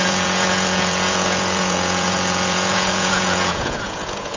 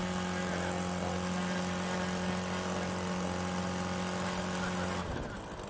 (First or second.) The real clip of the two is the second